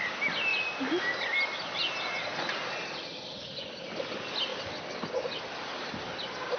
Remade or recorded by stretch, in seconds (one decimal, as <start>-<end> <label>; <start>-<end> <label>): 0.0-6.6 recorded